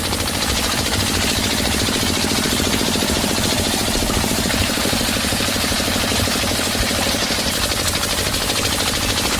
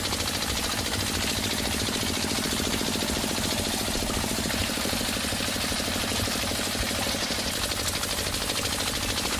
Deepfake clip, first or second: first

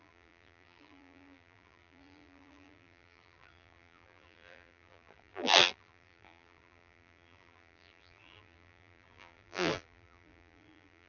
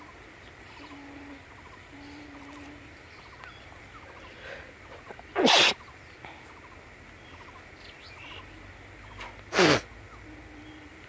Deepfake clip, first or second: first